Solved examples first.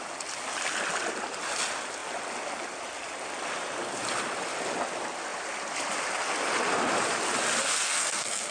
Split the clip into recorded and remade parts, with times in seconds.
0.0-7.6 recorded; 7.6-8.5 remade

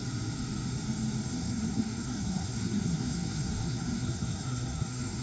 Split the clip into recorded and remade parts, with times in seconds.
0.0-1.3 recorded; 1.3-5.2 remade

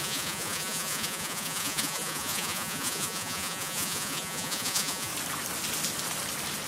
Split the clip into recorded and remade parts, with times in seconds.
0.0-5.1 remade; 5.1-6.7 recorded

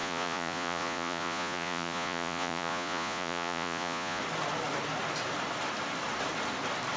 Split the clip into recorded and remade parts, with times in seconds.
0.0-4.2 remade; 4.2-7.0 recorded